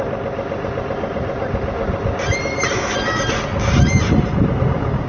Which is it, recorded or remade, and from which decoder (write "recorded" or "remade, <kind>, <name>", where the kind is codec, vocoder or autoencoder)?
recorded